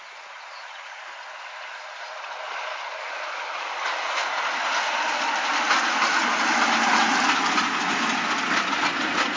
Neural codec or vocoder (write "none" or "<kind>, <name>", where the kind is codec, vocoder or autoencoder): none